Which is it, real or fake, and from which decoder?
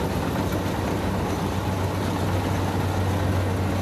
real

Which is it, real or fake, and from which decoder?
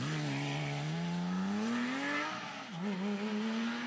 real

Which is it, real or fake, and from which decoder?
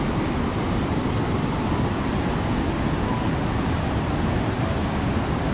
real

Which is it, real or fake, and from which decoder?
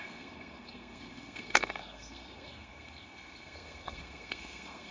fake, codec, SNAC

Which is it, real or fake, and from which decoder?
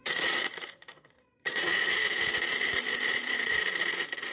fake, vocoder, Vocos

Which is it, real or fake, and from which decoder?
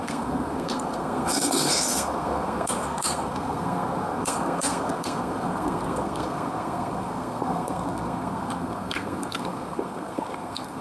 fake, codec, SNAC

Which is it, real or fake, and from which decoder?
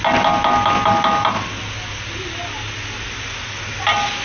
real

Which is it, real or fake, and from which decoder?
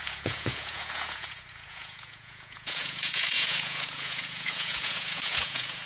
fake, vocoder, Vocos